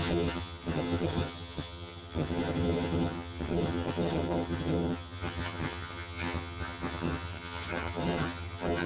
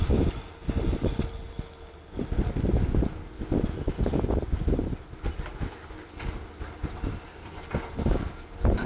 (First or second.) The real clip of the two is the second